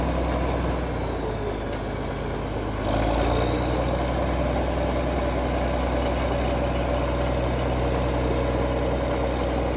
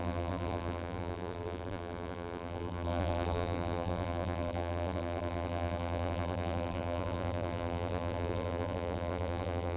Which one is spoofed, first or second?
second